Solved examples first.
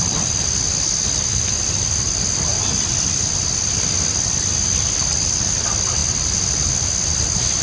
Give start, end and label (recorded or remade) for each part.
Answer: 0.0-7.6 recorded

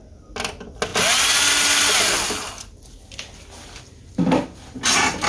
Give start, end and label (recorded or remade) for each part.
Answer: 0.0-5.3 recorded

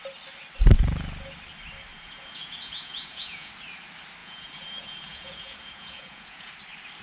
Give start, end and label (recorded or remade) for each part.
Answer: 0.0-1.9 recorded; 1.9-3.5 remade; 3.5-4.2 recorded; 4.2-6.5 remade; 6.5-7.0 recorded

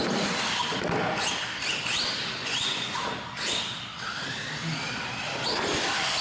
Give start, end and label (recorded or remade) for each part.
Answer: 0.0-2.4 recorded; 2.4-3.0 remade; 3.0-6.2 recorded